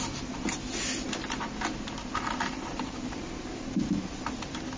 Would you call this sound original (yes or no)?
yes